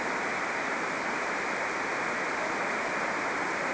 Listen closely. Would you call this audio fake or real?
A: real